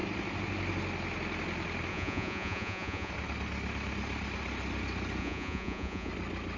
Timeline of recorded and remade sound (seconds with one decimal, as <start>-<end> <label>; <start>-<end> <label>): 0.0-1.9 recorded; 1.9-3.1 remade; 3.1-5.2 recorded; 5.2-6.1 remade; 6.1-6.6 recorded